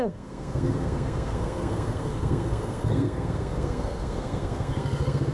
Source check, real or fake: fake